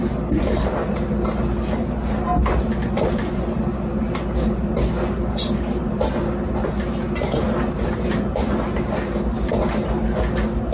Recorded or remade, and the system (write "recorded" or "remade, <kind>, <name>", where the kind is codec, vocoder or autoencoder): recorded